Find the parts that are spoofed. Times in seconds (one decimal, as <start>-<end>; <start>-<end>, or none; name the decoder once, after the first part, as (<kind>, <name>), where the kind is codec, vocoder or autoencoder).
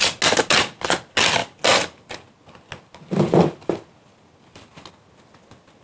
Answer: none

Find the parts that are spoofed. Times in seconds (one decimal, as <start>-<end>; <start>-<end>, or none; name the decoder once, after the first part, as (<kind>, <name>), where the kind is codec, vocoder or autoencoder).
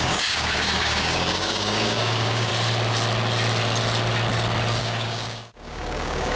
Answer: 0.0-2.5 (codec, DAC); 4.8-6.4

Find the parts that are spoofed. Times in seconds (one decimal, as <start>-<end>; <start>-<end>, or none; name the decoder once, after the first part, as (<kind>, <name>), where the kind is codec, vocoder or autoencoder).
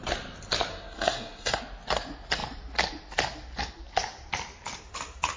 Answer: 0.7-1.6 (codec, SNAC)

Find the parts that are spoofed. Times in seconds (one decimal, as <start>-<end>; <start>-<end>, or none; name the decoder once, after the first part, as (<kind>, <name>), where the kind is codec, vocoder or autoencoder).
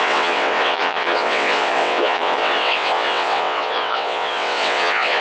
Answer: 0.0-5.2 (vocoder, WaveNeXt)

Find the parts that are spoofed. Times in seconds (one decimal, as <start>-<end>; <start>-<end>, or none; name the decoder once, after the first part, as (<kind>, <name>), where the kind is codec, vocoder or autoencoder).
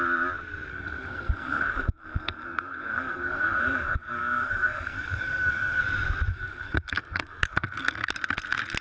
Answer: 0.7-5.8 (codec, SNAC); 6.3-8.1